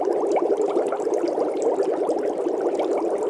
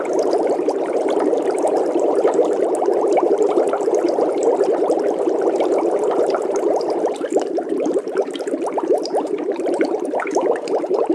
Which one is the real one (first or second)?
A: first